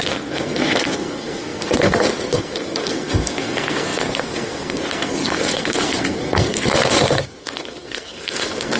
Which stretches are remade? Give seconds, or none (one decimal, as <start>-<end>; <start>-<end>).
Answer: 0.0-8.8